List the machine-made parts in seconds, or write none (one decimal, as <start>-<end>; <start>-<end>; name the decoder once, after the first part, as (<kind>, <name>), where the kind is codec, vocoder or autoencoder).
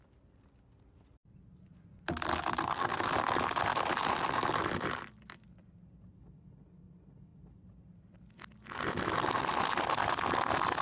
2.6-3.1 (codec, SNAC)